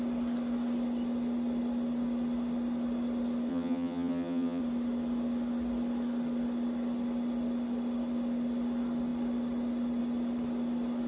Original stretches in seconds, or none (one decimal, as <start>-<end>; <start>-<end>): 0.0-3.5; 4.6-11.1